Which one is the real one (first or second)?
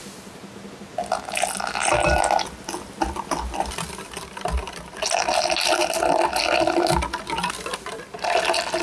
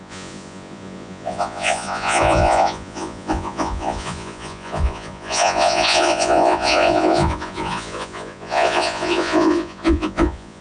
first